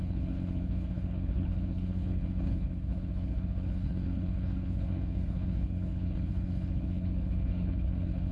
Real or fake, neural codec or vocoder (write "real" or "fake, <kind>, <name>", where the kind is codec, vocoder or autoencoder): fake, codec, HILCodec